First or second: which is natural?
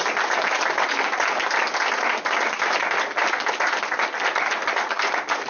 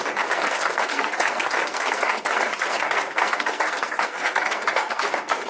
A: first